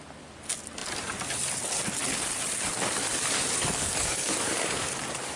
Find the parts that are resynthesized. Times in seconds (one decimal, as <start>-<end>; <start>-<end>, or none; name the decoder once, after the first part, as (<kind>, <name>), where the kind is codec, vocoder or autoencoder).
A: 3.6-4.9 (codec, DAC)